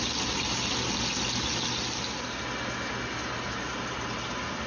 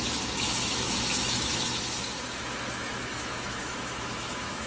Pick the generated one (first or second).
second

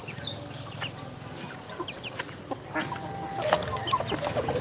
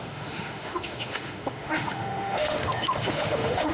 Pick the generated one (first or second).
second